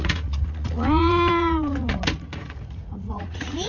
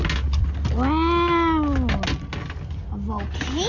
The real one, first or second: second